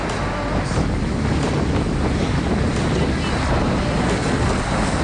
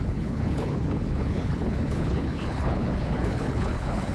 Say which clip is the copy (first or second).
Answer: second